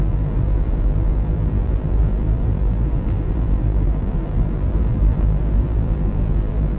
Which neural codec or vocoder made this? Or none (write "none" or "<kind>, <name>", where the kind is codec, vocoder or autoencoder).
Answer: vocoder, BigVGAN v2